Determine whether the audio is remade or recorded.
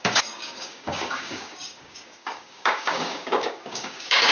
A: remade